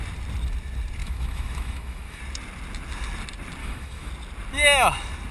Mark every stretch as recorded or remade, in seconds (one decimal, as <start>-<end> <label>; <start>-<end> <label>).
0.0-1.0 recorded; 1.0-2.2 remade; 2.2-3.6 recorded; 3.6-4.1 remade; 4.1-5.3 recorded